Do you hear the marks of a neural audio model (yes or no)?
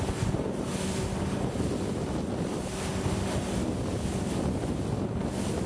no